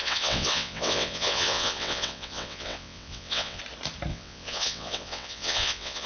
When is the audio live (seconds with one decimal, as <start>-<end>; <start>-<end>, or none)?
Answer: 3.6-4.1

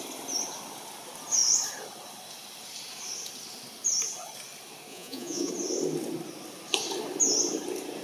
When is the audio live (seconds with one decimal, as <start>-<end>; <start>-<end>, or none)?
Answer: 0.0-4.9; 5.5-8.0

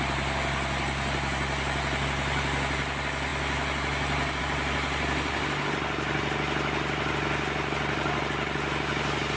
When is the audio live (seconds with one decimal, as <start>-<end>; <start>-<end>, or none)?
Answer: 0.0-9.4

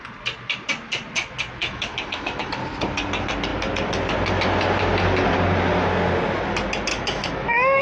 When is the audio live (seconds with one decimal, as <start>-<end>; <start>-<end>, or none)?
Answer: 0.0-1.6; 2.5-6.9

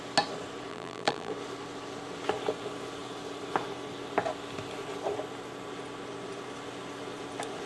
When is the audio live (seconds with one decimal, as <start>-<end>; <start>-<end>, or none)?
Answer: 0.0-0.7; 1.3-7.7

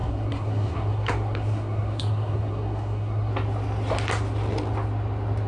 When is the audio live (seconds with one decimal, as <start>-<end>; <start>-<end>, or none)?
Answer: 3.3-5.5

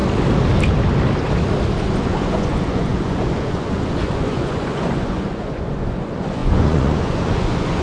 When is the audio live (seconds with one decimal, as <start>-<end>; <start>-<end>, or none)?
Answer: 0.0-1.8